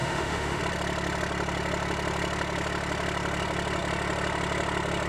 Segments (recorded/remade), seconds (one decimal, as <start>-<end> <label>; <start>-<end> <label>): 0.0-0.6 remade; 0.6-5.1 recorded